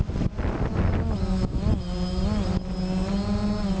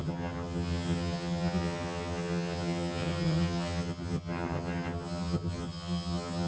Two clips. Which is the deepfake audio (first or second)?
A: second